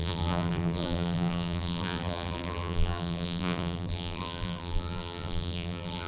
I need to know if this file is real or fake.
fake